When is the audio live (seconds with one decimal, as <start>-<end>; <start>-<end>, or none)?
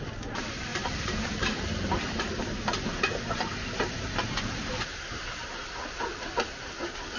0.0-0.7; 5.0-7.2